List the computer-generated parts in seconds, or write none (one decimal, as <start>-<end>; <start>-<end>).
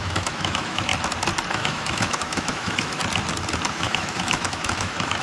0.0-0.9; 1.5-3.0; 3.7-5.2